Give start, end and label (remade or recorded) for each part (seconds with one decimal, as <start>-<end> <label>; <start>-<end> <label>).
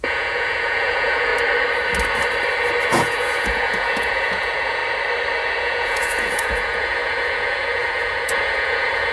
0.0-1.3 remade; 1.3-2.9 recorded; 2.9-4.8 remade; 4.8-5.6 recorded; 5.6-9.1 remade